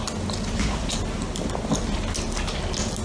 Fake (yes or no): no